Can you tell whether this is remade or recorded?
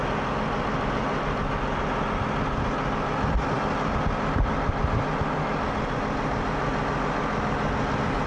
recorded